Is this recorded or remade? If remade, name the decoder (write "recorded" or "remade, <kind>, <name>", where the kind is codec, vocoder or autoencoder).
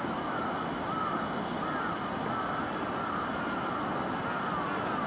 recorded